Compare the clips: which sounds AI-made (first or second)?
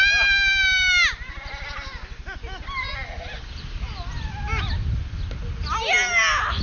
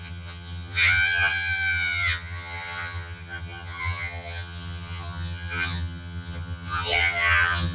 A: second